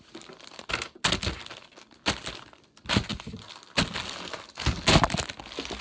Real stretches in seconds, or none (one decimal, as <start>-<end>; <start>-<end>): 0.0-5.8

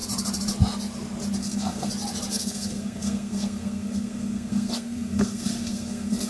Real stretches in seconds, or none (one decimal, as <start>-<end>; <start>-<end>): 0.0-1.4; 1.9-2.3

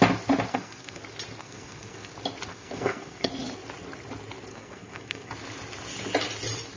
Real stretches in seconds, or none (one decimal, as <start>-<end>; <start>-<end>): 0.0-0.5; 1.0-1.4; 2.1-2.5; 3.3-4.5; 5.3-6.8

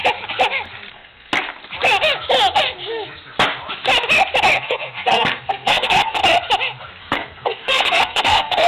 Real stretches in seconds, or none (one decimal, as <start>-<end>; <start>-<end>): 0.0-0.9; 1.3-4.6; 6.2-7.0

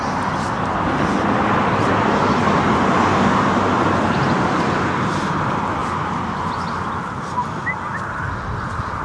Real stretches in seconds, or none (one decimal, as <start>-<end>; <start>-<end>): 0.0-9.0

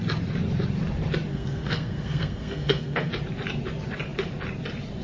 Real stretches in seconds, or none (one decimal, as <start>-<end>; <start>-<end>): 0.0-1.3; 3.1-5.0

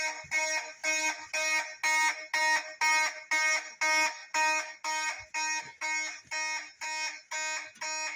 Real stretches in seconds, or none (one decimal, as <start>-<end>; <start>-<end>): 0.0-8.2

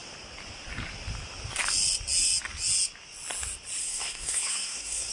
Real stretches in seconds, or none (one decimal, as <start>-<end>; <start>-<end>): 0.0-3.8